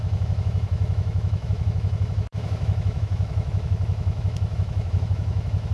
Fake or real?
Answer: fake